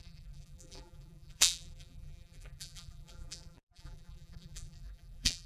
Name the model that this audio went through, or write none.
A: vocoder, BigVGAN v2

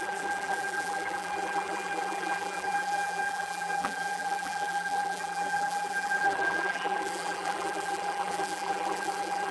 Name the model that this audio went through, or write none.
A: vocoder, BigVGAN v2